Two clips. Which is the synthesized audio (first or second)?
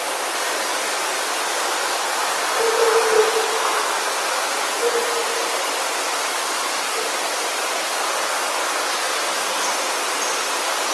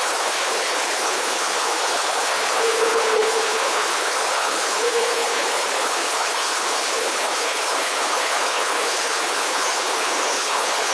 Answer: second